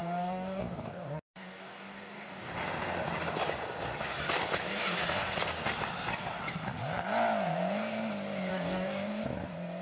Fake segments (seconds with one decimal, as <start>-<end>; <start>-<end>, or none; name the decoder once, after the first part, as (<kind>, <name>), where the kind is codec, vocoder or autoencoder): 0.0-2.5 (codec, DAC); 8.5-9.2